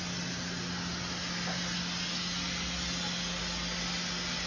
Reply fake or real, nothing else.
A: real